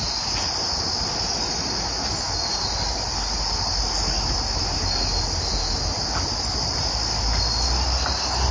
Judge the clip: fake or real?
real